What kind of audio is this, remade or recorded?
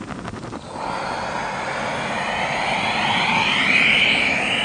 recorded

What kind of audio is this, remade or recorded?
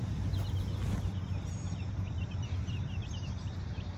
recorded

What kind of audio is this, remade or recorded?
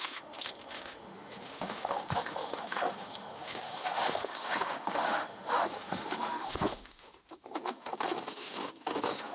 remade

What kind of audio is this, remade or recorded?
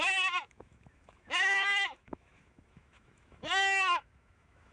remade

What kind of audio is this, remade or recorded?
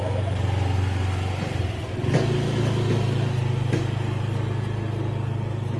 recorded